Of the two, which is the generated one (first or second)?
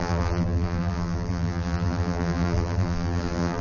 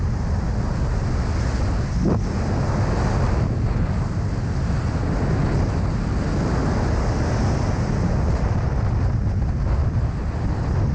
first